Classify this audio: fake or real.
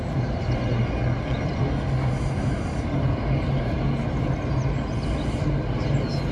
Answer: real